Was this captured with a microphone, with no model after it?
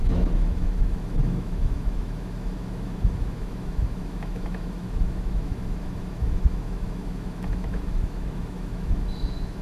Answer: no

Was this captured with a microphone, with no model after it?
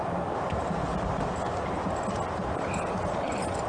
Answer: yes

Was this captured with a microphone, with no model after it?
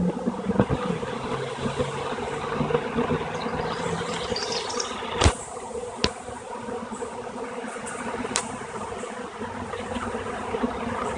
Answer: yes